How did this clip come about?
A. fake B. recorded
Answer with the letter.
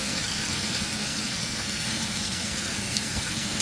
A